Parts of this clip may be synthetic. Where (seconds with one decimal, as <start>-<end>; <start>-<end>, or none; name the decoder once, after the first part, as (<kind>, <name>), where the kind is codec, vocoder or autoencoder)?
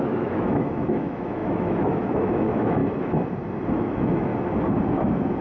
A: 0.0-2.8 (autoencoder, DAC-VAE); 3.7-4.3